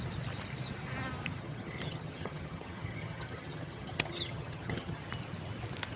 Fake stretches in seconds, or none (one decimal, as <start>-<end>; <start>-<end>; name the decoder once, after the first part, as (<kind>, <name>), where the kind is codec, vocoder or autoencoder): 1.4-5.0 (vocoder, HiFi-GAN)